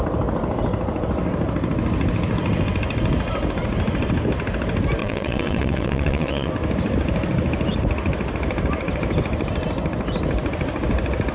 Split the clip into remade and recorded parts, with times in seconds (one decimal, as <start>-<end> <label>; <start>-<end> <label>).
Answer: 0.0-5.0 recorded; 5.0-6.5 remade; 6.5-11.3 recorded